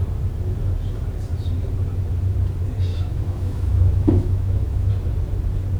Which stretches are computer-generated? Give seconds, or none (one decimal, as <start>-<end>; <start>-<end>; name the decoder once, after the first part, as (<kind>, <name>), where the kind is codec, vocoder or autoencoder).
2.9-4.9 (autoencoder, DAC-VAE)